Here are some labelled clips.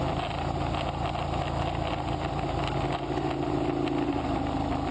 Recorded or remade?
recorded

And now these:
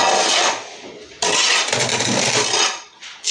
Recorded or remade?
recorded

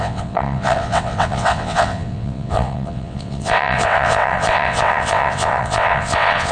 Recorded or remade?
remade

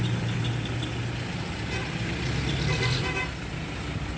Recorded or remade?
recorded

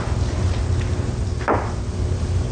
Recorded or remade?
recorded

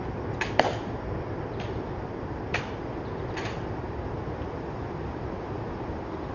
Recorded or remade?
recorded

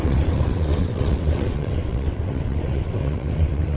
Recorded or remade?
remade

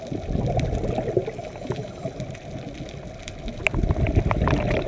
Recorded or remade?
recorded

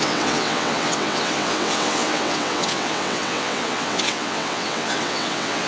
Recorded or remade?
remade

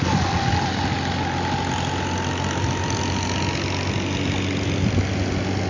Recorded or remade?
recorded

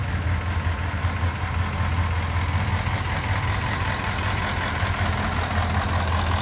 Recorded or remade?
recorded